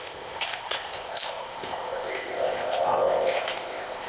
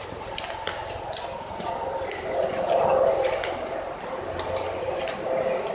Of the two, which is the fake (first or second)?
first